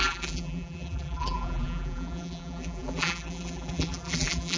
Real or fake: fake